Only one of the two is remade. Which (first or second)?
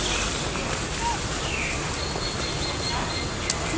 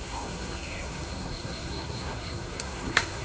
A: second